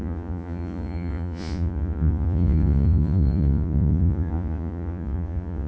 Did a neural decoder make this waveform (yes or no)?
yes